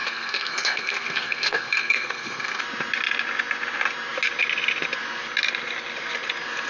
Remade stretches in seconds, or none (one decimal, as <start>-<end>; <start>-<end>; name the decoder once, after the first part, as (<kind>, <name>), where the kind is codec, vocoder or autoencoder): 0.0-2.6 (codec, SNAC)